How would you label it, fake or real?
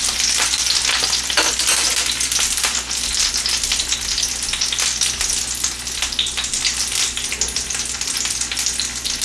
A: real